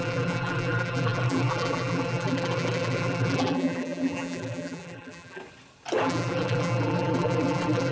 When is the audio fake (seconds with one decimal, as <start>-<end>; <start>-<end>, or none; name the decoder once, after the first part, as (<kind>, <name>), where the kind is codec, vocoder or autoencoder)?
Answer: 0.0-5.4 (vocoder, BigVGAN v2); 6.0-7.9